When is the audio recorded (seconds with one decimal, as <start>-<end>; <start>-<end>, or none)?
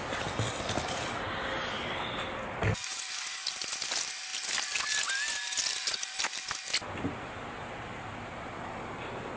0.0-9.4